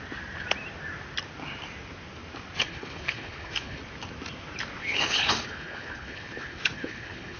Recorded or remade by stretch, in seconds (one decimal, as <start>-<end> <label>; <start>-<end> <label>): 0.0-2.6 recorded; 2.6-3.8 remade; 3.8-4.8 recorded; 4.8-7.4 remade